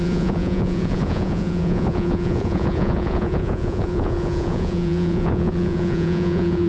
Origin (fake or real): fake